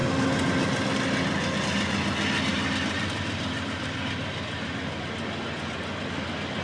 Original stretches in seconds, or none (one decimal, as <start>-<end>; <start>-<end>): 0.0-2.5; 3.7-6.6